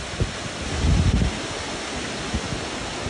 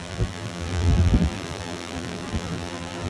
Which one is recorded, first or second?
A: first